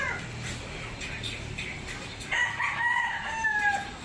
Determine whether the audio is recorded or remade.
recorded